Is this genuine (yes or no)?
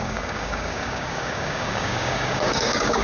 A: no